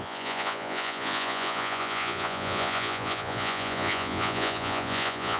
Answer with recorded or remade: remade